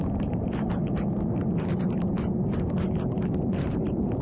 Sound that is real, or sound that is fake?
fake